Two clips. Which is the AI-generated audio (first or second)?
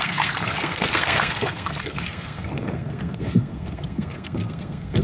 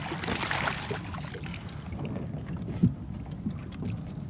first